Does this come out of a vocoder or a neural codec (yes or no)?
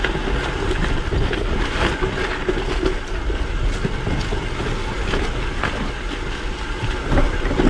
no